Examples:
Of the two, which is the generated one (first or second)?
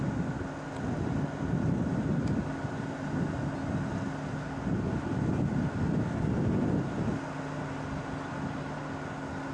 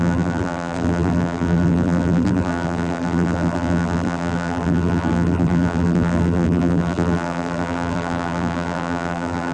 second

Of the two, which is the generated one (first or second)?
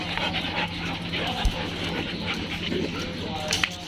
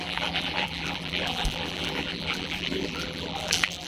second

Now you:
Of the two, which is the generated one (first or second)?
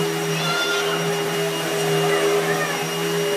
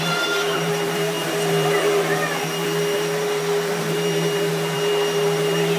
second